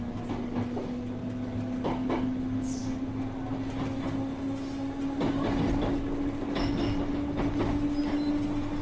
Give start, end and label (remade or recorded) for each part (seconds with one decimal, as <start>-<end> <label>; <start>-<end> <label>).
0.0-8.8 recorded